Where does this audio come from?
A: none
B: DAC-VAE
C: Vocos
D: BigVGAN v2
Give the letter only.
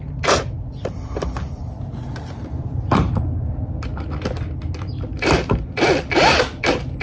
A